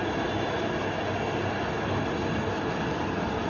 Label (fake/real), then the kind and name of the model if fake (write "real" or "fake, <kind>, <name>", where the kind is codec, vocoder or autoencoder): real